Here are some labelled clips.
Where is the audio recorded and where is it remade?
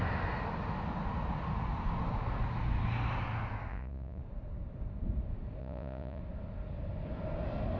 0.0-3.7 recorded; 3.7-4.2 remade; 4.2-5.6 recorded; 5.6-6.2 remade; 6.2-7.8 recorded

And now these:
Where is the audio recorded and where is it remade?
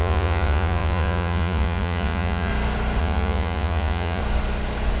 0.0-2.5 remade; 2.5-3.0 recorded; 3.0-4.2 remade; 4.2-5.0 recorded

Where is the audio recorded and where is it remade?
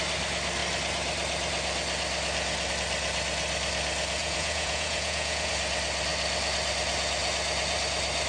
0.0-4.2 recorded; 4.2-5.5 remade; 5.5-8.3 recorded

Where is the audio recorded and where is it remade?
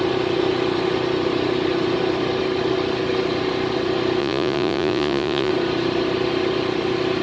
0.0-4.2 recorded; 4.2-5.5 remade; 5.5-7.2 recorded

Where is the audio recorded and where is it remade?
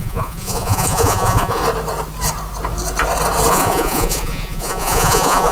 0.0-1.6 remade; 1.6-3.5 recorded; 3.5-5.5 remade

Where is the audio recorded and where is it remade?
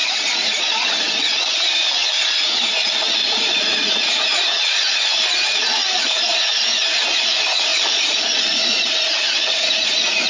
0.0-10.3 remade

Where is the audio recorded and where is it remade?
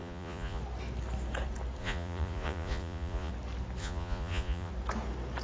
0.0-0.6 remade; 0.6-1.8 recorded; 1.8-3.3 remade; 3.3-3.8 recorded; 3.8-4.7 remade; 4.7-5.4 recorded